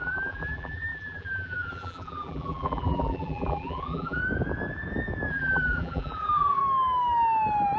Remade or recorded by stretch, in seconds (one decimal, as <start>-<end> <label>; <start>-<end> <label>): 0.0-4.2 remade; 4.2-5.3 recorded; 5.3-6.6 remade; 6.6-7.8 recorded